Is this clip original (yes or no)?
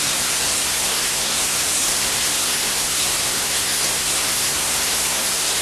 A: no